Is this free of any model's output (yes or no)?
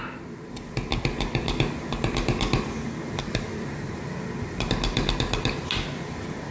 yes